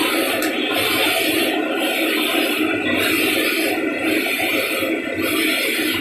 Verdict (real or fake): real